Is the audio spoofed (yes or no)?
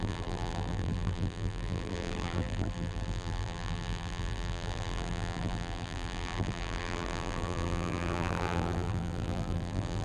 yes